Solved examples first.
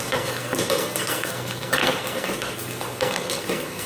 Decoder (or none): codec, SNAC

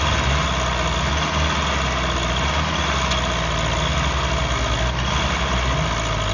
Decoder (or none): none